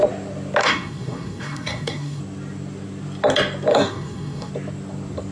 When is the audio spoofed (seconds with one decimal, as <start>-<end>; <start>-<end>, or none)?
0.6-2.2; 3.7-4.5